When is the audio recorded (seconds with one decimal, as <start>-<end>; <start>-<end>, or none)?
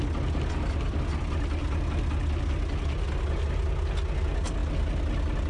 0.0-5.5